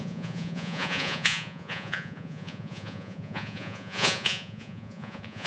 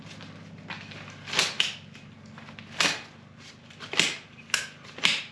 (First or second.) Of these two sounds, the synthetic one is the first